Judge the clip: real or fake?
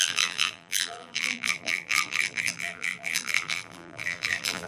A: fake